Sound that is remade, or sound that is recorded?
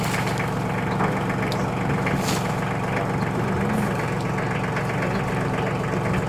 recorded